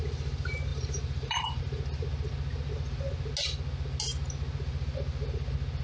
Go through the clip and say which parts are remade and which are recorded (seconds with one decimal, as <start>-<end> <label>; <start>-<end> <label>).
0.0-0.7 recorded; 0.7-1.6 remade; 1.6-5.8 recorded